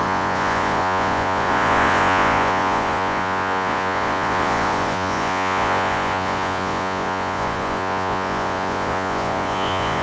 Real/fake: fake